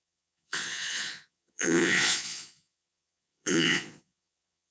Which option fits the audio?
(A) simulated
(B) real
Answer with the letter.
A